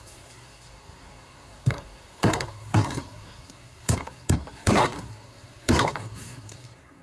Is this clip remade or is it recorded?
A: remade